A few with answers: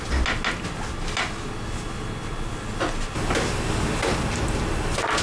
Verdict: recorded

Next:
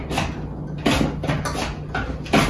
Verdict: recorded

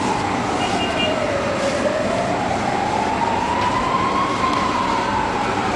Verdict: recorded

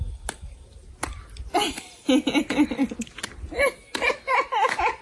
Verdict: recorded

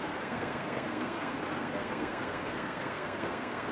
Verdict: remade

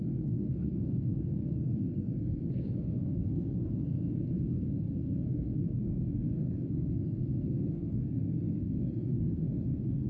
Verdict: remade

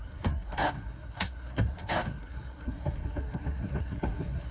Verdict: remade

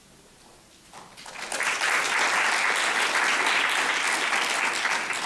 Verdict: recorded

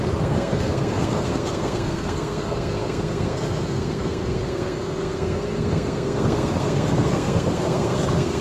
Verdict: remade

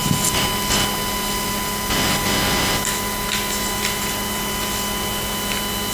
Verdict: recorded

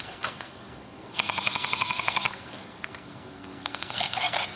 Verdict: remade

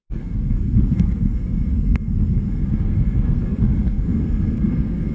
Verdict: remade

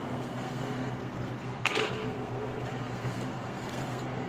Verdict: remade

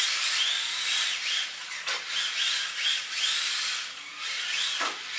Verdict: recorded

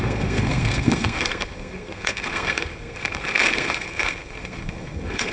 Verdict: remade